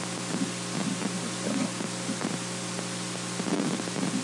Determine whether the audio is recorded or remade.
recorded